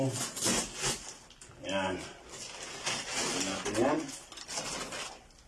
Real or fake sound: real